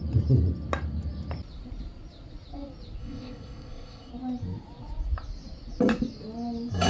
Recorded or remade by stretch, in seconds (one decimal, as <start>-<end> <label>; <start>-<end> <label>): 0.0-3.0 recorded; 3.0-4.1 remade; 4.1-6.9 recorded